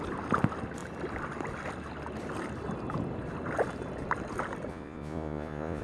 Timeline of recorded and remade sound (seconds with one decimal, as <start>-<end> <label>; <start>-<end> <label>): 0.0-4.7 recorded; 4.7-5.8 remade